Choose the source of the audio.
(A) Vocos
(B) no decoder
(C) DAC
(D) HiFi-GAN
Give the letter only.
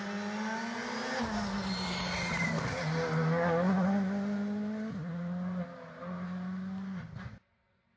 B